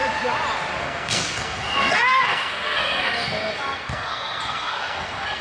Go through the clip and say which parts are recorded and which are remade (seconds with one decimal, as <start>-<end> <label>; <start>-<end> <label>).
0.0-0.8 recorded; 0.8-5.4 remade